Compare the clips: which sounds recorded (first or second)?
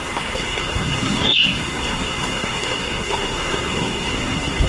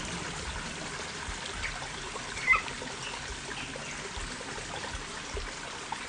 second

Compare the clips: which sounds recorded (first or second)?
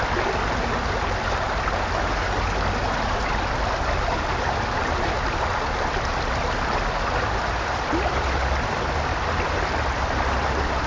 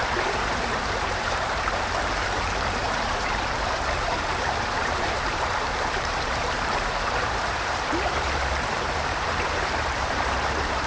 first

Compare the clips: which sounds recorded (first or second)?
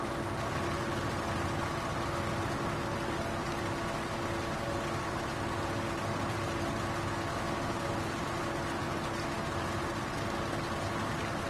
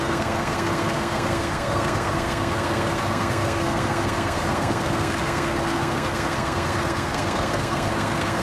first